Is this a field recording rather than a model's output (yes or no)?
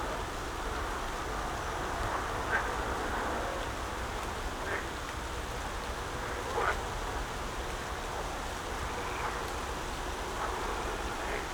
yes